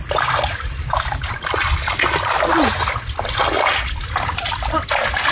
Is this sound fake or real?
real